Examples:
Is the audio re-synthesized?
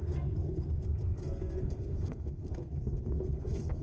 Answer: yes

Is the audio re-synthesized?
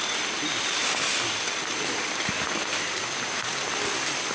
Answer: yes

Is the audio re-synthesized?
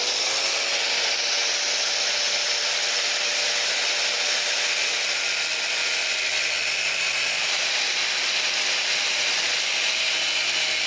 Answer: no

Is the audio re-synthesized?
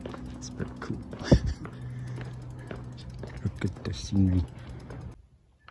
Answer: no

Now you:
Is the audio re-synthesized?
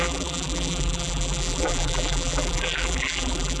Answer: yes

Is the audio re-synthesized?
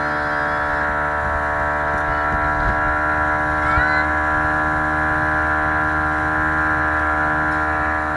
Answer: no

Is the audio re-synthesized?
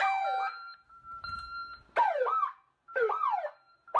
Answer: yes